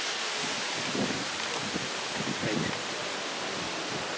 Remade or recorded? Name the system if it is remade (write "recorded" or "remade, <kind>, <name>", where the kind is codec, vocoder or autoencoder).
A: recorded